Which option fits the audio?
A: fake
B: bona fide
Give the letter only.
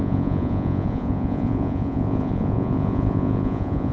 A